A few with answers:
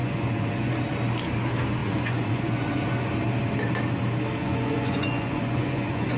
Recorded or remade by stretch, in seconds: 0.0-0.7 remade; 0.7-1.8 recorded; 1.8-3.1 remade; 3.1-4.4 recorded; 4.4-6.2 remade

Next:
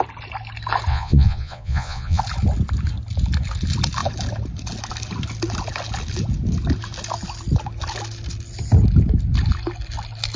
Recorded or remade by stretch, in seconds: 0.0-0.9 recorded; 0.9-2.2 remade; 2.2-10.4 recorded

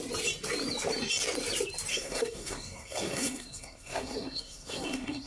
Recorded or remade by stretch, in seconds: 0.0-1.9 recorded; 1.9-5.3 remade

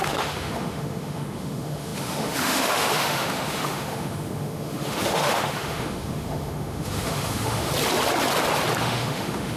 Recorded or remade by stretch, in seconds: 0.0-7.7 remade; 7.7-8.8 recorded; 8.8-9.6 remade

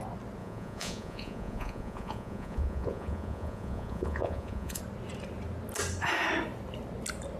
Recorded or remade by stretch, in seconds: 0.0-0.4 recorded; 0.4-4.8 remade; 4.8-7.4 recorded